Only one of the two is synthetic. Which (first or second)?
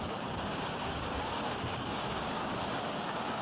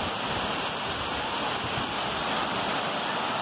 first